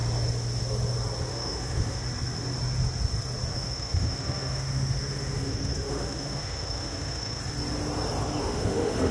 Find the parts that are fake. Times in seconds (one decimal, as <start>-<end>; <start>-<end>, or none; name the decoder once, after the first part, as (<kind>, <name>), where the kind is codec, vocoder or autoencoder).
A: 1.3-2.0 (autoencoder, DAC-VAE); 3.5-7.4; 8.4-9.1